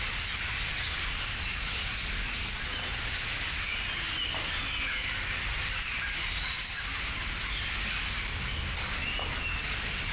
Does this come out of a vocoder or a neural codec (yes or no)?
no